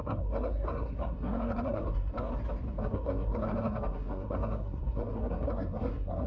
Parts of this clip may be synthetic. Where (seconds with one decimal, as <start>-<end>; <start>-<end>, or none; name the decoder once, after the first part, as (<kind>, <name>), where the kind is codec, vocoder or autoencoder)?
0.0-2.3 (codec, SNAC); 2.8-6.3